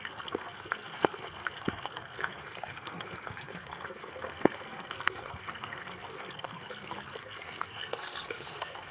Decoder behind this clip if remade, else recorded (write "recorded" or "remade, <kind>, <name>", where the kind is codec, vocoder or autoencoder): remade, codec, SNAC